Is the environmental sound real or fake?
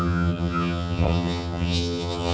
fake